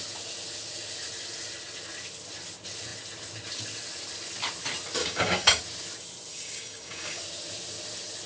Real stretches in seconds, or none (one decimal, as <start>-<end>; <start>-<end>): 0.0-5.0; 5.6-6.3; 7.2-8.3